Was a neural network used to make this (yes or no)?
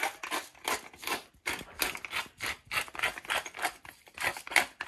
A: no